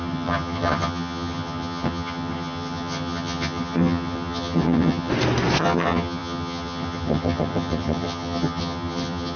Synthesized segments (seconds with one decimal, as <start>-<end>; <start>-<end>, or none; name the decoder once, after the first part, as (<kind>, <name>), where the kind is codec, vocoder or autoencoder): 0.0-5.1 (vocoder, HiFi-GAN); 5.6-9.4